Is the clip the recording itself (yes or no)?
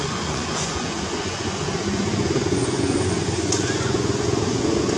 no